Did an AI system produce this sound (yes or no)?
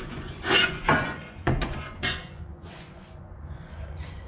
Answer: yes